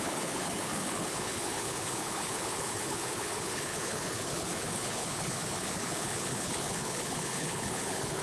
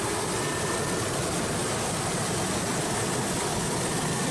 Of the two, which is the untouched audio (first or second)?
second